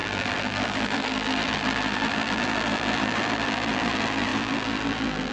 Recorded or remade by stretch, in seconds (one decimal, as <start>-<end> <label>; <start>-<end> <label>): 0.0-5.3 remade